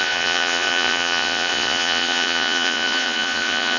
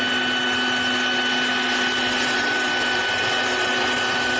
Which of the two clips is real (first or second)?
second